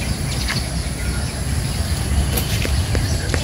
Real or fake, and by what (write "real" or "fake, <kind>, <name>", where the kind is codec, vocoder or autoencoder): real